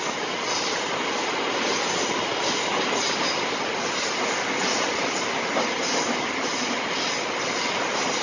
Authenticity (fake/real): real